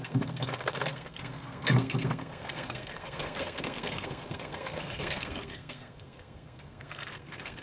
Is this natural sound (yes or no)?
no